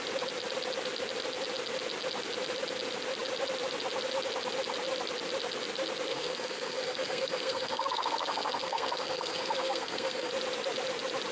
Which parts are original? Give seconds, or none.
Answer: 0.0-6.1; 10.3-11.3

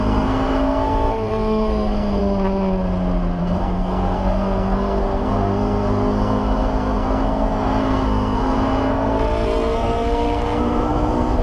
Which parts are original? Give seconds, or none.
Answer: 2.2-3.4

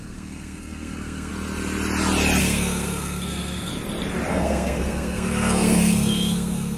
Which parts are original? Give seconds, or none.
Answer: 1.3-2.4; 3.7-4.3

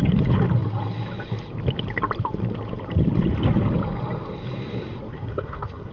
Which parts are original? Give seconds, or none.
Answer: 0.0-5.1

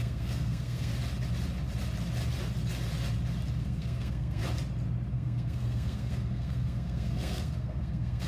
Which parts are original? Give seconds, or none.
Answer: 0.9-3.6; 4.4-5.1

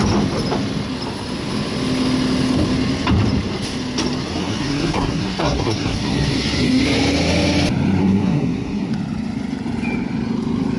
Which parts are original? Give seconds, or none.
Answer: 0.0-4.4; 6.8-8.0; 8.9-10.8